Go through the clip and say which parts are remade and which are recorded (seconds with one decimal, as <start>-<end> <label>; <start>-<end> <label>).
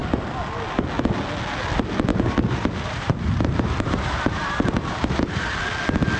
0.0-2.1 recorded; 2.1-5.6 remade; 5.6-6.2 recorded